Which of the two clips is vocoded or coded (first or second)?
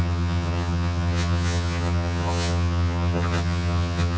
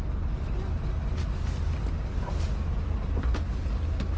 first